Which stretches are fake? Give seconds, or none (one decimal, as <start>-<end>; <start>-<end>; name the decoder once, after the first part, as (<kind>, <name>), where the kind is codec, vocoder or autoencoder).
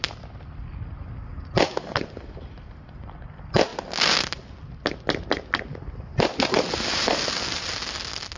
none